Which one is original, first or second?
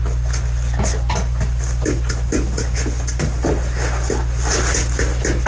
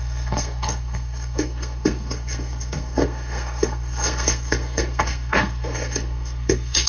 first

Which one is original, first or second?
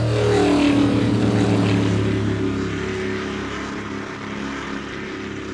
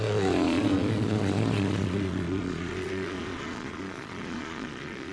first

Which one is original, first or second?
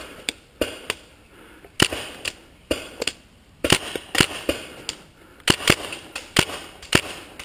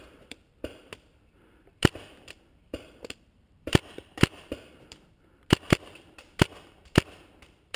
first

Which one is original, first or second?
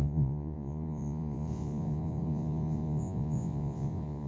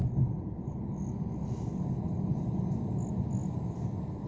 second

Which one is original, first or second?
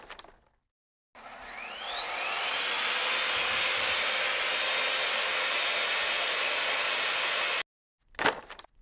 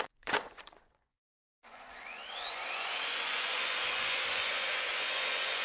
first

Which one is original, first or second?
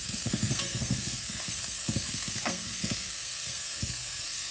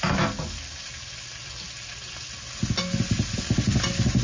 second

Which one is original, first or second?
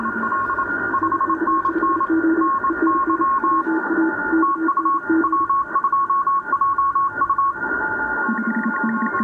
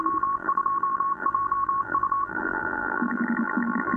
first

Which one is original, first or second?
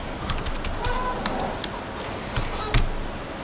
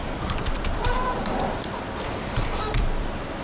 first